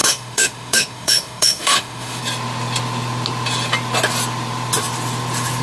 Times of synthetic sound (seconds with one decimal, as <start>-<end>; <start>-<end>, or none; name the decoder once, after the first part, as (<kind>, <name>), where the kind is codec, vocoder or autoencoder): 0.0-2.2 (autoencoder, DAC-VAE)